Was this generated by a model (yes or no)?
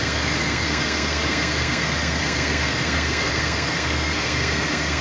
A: yes